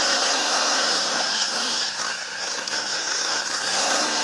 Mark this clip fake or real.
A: fake